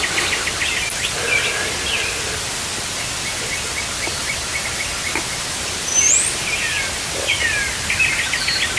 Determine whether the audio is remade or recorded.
recorded